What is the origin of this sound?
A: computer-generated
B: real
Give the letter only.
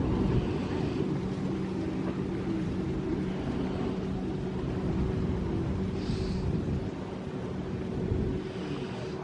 B